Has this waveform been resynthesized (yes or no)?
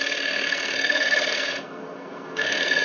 yes